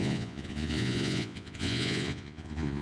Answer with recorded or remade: remade